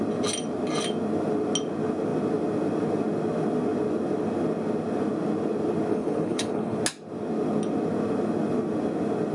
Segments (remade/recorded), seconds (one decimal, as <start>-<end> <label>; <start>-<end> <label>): 0.0-5.9 recorded; 5.9-6.8 remade; 6.8-9.3 recorded